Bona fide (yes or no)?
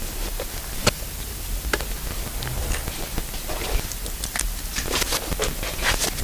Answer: yes